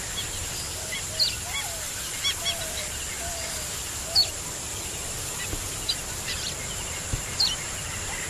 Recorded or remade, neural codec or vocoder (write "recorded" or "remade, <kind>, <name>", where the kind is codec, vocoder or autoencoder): recorded